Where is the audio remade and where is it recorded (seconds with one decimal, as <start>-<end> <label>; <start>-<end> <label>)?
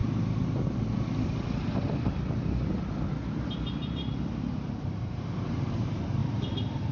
0.0-3.4 recorded; 3.4-6.2 remade; 6.2-6.9 recorded